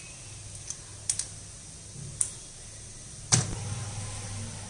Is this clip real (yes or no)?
yes